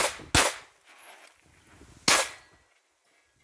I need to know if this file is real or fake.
real